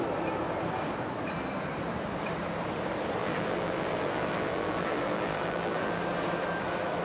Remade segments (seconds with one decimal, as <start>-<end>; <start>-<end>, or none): 3.2-6.0